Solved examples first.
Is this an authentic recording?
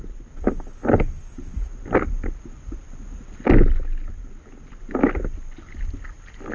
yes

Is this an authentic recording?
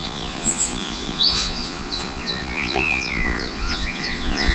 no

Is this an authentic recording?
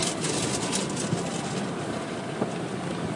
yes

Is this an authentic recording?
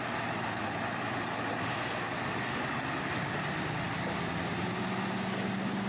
yes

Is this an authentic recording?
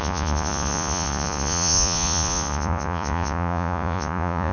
no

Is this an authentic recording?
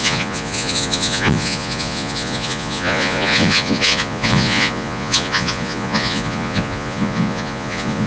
no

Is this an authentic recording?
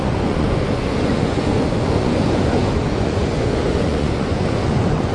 no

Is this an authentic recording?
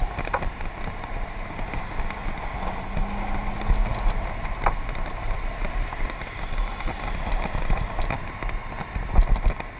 yes